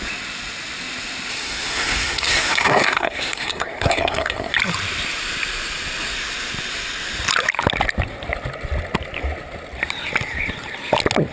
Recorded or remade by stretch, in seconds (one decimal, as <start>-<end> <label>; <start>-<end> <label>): 0.0-1.3 recorded; 1.3-4.5 remade; 4.5-11.3 recorded